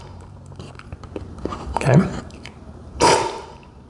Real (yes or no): no